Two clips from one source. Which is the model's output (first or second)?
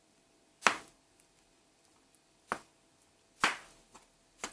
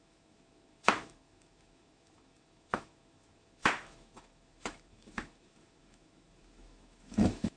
second